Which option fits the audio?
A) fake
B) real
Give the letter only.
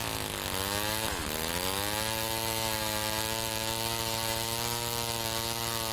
B